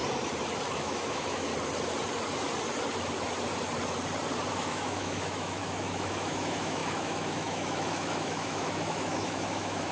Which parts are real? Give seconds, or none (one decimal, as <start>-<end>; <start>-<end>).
0.0-0.7; 1.5-4.5